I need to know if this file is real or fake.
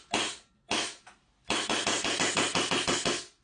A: real